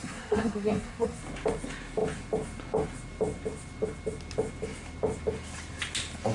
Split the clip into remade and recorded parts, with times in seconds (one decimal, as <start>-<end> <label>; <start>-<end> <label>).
0.0-1.2 remade; 1.2-6.3 recorded

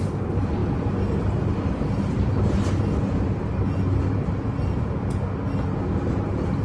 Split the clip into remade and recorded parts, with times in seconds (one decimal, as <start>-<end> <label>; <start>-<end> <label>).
0.0-6.6 recorded

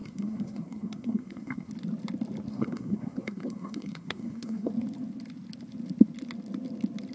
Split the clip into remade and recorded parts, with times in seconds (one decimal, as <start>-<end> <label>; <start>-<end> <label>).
0.0-1.7 remade; 1.7-2.5 recorded; 2.5-4.7 remade; 4.7-7.1 recorded

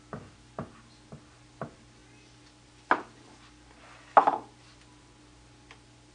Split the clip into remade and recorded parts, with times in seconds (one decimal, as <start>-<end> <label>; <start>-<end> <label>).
0.0-6.1 recorded

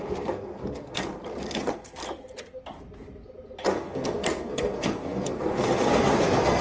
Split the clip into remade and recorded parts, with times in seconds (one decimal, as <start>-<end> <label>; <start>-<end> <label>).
0.0-1.0 remade; 1.0-1.6 recorded; 1.6-2.0 remade; 2.0-3.6 recorded; 3.6-6.6 remade

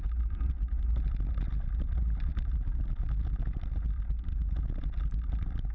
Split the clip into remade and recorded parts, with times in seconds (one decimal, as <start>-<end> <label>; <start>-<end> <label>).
0.0-5.7 recorded